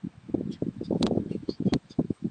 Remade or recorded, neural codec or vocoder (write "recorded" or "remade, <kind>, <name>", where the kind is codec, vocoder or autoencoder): remade, autoencoder, DAC-VAE